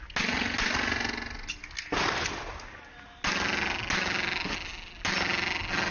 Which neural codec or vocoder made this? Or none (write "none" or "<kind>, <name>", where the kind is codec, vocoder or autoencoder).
none